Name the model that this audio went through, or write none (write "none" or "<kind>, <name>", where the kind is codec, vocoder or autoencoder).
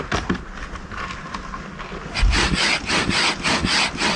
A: none